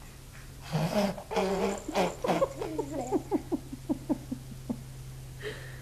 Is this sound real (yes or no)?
yes